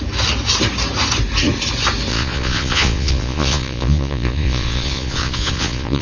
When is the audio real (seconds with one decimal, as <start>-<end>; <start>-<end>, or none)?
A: 0.0-2.1